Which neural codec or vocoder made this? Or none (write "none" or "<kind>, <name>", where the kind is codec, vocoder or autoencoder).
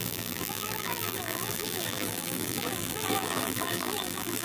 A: vocoder, BigVGAN v2